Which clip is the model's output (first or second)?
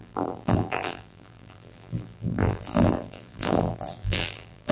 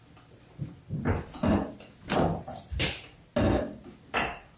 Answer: first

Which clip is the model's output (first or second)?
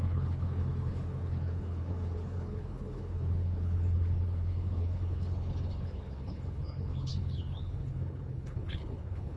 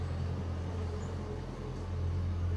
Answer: first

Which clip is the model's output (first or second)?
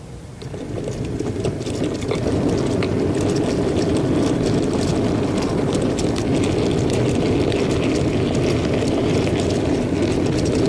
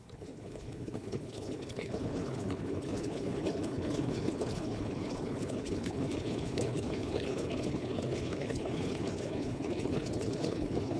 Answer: second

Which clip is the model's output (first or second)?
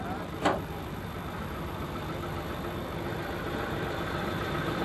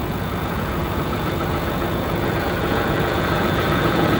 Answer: second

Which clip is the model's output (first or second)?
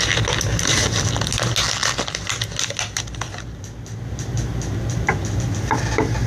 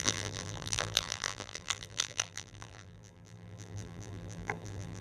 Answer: second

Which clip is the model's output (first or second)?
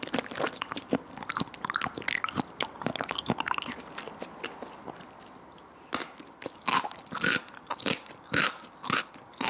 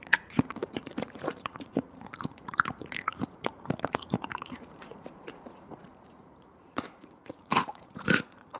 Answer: second